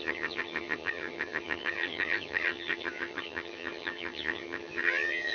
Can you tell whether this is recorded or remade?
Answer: remade